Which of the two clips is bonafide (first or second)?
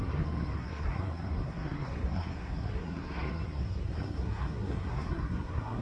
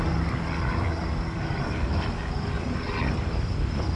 second